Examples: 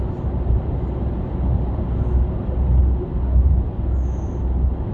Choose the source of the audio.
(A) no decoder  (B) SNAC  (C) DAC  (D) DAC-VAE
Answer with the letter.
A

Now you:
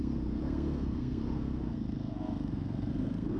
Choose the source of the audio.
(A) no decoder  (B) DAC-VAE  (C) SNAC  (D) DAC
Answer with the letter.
C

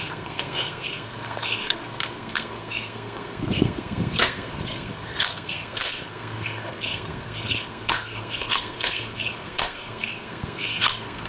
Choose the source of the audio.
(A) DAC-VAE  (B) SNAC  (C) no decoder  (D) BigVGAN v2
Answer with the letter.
B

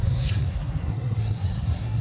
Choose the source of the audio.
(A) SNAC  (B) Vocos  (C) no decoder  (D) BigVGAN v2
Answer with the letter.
A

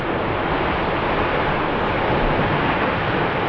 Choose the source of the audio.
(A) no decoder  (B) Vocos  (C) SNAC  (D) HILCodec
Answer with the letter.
A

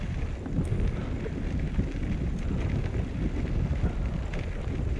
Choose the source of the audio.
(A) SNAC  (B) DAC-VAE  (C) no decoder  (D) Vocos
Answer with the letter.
C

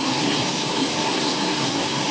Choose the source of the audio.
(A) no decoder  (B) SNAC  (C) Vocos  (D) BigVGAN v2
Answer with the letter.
B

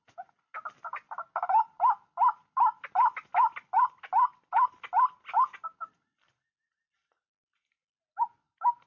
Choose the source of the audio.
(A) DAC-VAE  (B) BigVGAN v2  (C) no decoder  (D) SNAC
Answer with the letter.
C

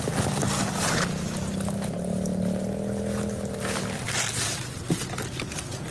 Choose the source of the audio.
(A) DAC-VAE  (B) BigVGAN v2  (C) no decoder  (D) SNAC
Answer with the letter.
C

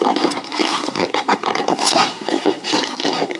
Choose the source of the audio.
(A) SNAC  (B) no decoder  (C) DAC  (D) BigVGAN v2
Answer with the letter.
A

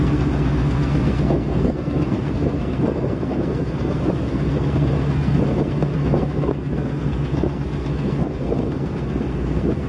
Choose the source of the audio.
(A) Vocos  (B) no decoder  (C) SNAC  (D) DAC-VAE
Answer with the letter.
C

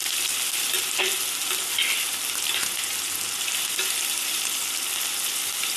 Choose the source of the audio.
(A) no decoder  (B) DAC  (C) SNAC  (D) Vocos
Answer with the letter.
A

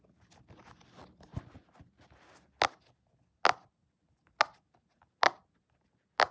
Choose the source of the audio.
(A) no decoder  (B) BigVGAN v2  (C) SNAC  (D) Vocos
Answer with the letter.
A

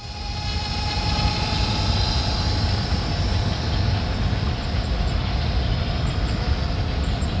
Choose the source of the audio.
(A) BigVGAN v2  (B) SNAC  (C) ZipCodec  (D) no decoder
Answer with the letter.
D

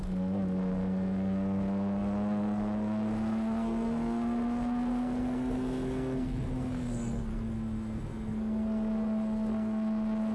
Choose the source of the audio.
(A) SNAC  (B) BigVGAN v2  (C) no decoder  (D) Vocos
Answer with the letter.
A